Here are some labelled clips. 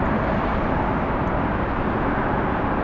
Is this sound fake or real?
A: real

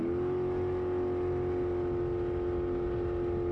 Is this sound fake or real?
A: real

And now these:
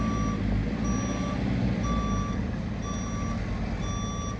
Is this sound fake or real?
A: real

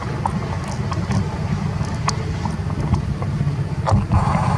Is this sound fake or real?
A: real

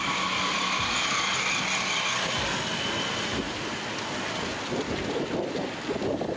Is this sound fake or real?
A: real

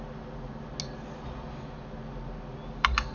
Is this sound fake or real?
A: real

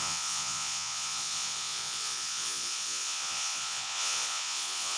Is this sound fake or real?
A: fake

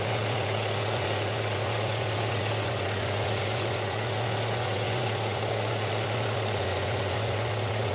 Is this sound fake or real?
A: fake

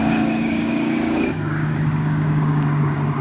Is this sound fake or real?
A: fake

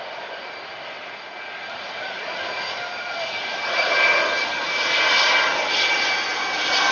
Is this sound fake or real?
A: real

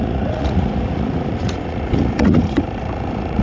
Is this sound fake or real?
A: fake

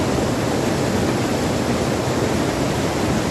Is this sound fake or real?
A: real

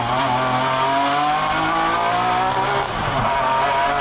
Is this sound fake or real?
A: real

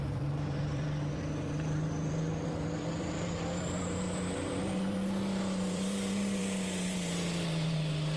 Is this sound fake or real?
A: fake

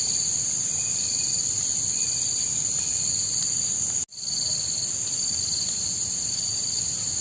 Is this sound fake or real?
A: real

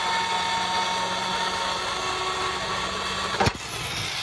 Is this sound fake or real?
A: real